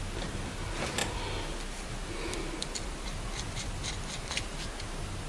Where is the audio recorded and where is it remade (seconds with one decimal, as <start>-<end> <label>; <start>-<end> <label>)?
0.0-5.3 recorded